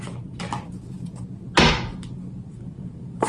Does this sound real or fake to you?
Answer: real